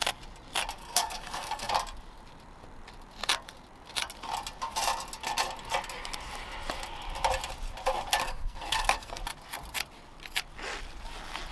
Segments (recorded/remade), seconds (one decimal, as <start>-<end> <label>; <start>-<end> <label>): 0.0-0.8 recorded; 0.8-1.7 remade; 1.7-8.2 recorded; 8.2-9.2 remade; 9.2-11.5 recorded